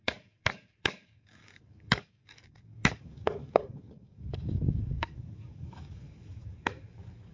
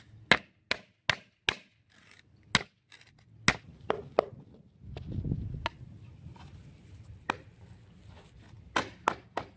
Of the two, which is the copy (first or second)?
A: first